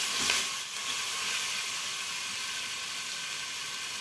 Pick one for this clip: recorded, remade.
recorded